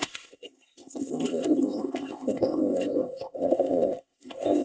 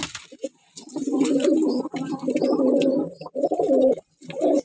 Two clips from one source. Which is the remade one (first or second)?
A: first